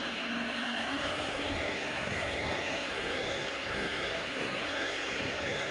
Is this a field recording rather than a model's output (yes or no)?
no